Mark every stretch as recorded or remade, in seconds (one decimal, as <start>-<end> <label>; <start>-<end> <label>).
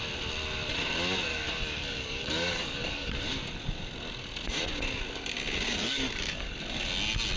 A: 0.0-1.3 recorded; 1.3-3.1 remade; 3.1-5.8 recorded; 5.8-6.6 remade; 6.6-7.4 recorded